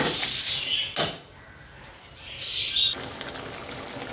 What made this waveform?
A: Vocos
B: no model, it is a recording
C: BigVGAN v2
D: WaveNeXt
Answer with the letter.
B